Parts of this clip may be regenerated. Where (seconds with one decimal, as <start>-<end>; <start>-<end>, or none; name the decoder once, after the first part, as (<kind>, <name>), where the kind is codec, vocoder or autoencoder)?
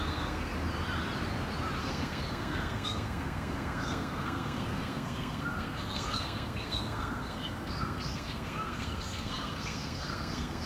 0.0-0.5 (codec, SNAC); 1.8-10.7